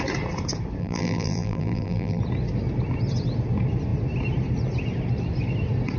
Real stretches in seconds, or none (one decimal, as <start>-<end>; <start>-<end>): 0.0-0.8; 2.2-6.0